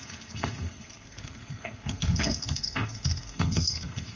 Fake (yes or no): yes